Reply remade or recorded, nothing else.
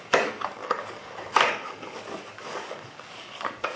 remade